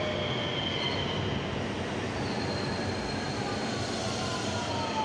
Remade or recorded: recorded